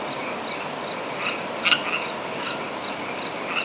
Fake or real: real